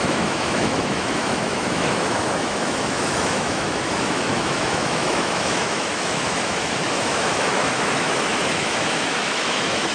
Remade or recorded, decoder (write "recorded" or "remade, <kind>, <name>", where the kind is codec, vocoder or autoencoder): remade, autoencoder, DAC-VAE